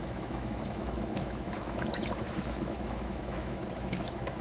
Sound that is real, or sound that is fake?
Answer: fake